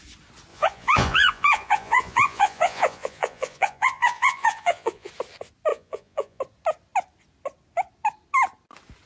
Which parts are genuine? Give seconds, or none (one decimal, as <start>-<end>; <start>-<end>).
0.0-0.5; 5.1-5.7; 6.4-9.1